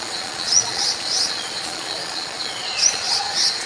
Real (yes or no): no